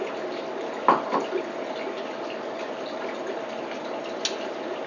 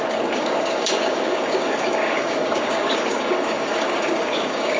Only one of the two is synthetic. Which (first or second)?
second